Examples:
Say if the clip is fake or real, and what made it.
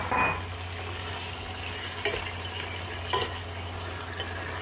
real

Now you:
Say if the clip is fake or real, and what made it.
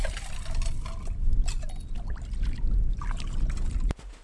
real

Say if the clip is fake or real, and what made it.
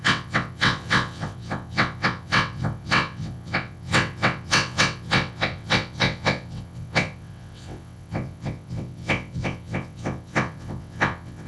fake, vocoder, WaveNeXt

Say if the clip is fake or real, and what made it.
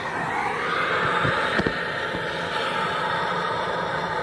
real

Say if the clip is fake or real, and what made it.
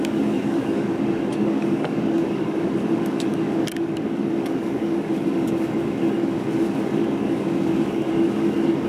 fake, codec, DAC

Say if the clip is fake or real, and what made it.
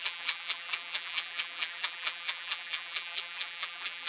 fake, vocoder, BigVGAN v2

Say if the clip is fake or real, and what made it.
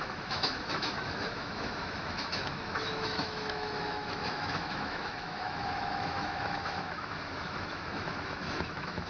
fake, autoencoder, DAC-VAE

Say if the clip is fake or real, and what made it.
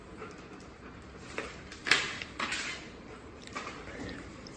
fake, vocoder, BigVGAN v2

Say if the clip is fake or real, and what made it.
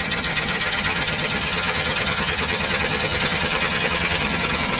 fake, vocoder, HiFi-GAN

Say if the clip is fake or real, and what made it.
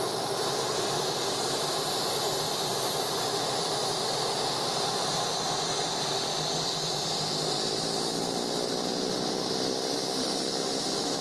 real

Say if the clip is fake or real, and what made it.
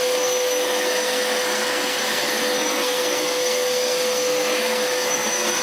fake, codec, SNAC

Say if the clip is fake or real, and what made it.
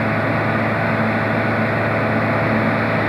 real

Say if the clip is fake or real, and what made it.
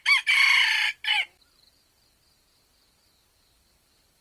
fake, vocoder, BigVGAN v2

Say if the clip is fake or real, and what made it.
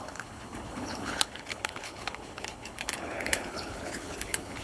fake, codec, HILCodec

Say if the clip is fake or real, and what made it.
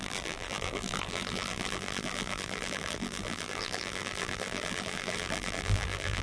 fake, vocoder, BigVGAN v2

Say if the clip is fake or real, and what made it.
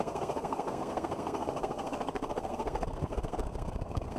fake, codec, SNAC